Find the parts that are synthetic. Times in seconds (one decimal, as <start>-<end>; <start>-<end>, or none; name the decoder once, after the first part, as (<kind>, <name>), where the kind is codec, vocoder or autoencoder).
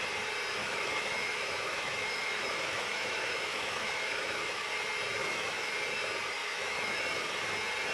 0.6-4.7 (autoencoder, DAC-VAE); 5.2-5.7; 6.4-7.0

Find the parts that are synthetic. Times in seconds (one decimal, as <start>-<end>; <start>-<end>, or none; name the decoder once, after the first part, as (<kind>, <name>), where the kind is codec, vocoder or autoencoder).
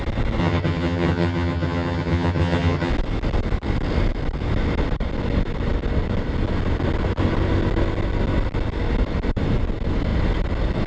0.4-2.9 (vocoder, HiFi-GAN)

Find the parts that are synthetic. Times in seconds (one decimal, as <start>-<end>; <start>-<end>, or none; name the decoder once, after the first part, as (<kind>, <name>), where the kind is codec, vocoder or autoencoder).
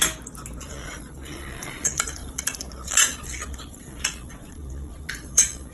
0.6-5.7 (vocoder, Vocos)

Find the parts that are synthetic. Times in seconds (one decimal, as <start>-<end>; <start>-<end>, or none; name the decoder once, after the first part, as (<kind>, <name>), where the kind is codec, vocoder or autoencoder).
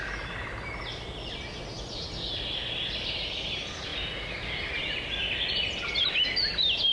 none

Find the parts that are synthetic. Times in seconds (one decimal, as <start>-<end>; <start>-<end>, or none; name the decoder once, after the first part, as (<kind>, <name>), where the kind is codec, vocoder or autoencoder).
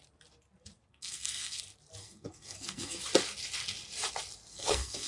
0.9-1.6 (codec, SNAC); 2.0-3.0; 4.5-5.1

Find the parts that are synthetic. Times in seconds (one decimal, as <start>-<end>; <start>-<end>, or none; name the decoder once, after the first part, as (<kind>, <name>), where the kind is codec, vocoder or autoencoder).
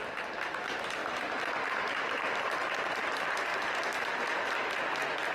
0.0-3.5 (vocoder, BigVGAN v2)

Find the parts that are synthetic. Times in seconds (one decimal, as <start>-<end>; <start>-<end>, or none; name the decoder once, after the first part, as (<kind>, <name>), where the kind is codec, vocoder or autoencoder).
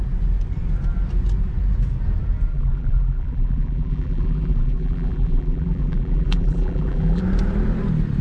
2.5-7.2 (vocoder, BigVGAN v2)